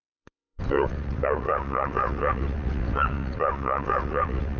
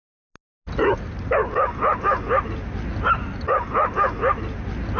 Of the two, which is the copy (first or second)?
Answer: first